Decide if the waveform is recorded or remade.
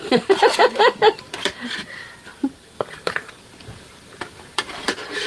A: remade